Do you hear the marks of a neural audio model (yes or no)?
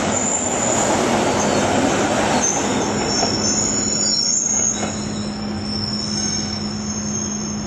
no